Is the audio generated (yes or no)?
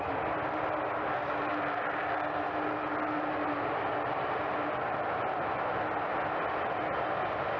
no